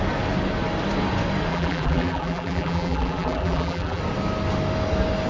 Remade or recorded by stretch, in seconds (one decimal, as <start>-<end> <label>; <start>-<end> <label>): 0.0-1.5 recorded; 1.5-4.0 remade; 4.0-5.3 recorded